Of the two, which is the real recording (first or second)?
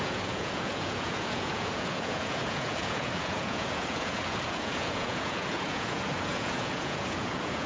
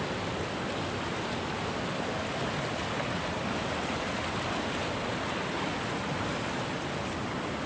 second